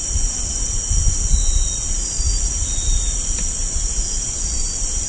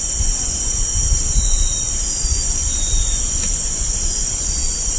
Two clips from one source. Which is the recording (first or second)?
first